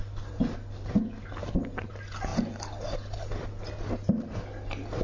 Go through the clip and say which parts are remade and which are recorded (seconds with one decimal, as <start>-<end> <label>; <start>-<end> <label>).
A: 0.0-5.0 recorded